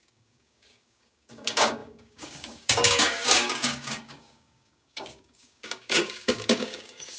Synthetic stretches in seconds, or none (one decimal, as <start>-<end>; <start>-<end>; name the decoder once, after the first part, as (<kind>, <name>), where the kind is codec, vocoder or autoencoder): 0.0-7.2 (codec, DAC)